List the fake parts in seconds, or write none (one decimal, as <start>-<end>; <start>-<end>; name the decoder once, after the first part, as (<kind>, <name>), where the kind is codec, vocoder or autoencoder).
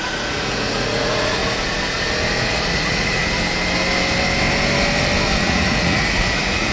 0.0-1.4 (vocoder, Vocos); 2.4-3.2; 5.4-6.7